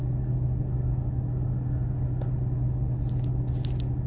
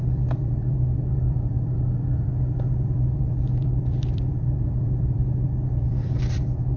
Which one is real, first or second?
first